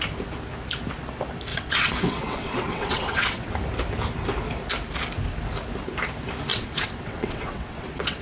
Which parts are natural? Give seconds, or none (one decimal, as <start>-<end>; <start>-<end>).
0.0-1.5; 3.5-6.5